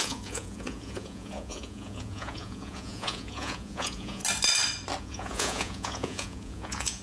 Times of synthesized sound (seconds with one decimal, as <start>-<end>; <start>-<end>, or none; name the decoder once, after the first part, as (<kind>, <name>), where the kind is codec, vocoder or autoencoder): 0.0-4.2 (vocoder, Vocos); 5.0-7.0

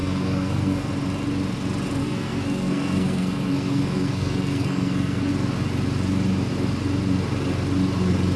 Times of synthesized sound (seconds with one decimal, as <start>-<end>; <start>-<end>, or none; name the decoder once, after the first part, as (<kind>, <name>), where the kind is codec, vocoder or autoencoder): 0.0-0.9 (codec, SNAC); 2.0-5.3

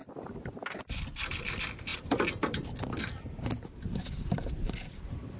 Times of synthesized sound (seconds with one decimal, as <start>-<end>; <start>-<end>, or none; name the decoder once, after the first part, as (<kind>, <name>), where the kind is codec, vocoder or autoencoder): none